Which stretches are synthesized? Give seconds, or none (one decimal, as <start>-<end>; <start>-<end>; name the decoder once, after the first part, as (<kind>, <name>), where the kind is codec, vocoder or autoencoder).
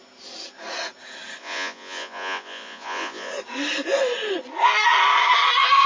1.4-3.3 (vocoder, Vocos)